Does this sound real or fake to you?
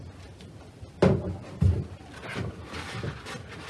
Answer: real